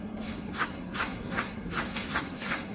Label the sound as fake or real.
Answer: fake